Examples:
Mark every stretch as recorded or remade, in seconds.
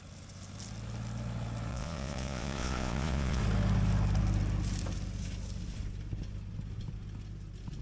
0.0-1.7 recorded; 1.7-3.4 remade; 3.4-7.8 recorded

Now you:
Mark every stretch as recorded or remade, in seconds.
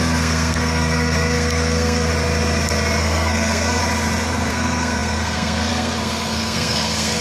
0.0-2.1 remade; 2.1-3.0 recorded; 3.0-3.8 remade; 3.8-4.5 recorded; 4.5-7.2 remade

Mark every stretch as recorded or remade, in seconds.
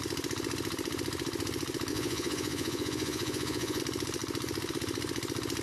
0.0-1.9 recorded; 1.9-3.8 remade; 3.8-5.6 recorded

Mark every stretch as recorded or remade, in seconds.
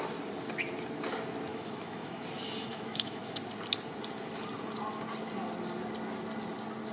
0.0-1.5 recorded; 1.5-2.2 remade; 2.2-2.7 recorded; 2.7-3.4 remade; 3.4-6.9 recorded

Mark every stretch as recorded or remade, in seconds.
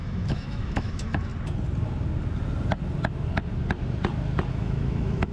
0.0-1.3 remade; 1.3-4.5 recorded; 4.5-5.3 remade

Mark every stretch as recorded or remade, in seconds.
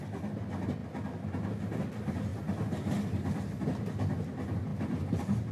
0.0-4.7 recorded; 4.7-5.5 remade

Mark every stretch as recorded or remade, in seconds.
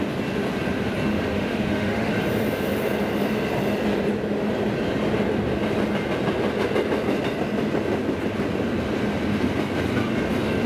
0.0-1.1 recorded; 1.1-2.1 remade; 2.1-10.7 recorded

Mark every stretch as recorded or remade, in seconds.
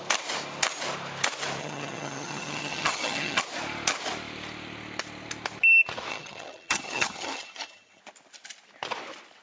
0.0-1.6 recorded; 1.6-3.4 remade; 3.4-6.1 recorded; 6.1-8.0 remade; 8.0-9.4 recorded